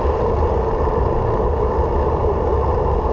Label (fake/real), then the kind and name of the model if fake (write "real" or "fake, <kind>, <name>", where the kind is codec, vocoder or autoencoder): real